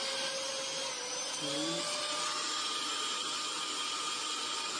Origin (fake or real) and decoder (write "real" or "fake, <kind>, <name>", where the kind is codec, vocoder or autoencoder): real